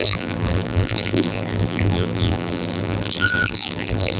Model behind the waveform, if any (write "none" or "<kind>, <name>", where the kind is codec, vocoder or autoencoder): vocoder, BigVGAN v2